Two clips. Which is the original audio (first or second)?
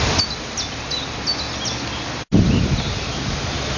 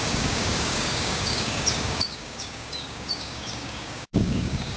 first